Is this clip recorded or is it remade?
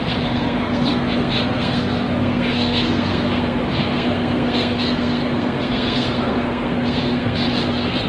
remade